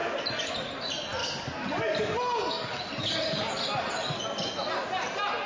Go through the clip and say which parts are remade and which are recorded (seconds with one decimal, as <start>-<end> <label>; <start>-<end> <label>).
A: 0.0-5.5 recorded